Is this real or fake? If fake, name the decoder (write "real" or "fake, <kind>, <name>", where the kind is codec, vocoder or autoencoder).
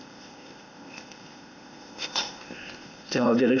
fake, codec, ZipCodec